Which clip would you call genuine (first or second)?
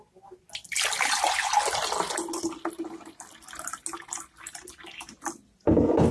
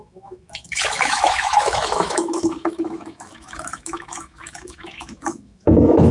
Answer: first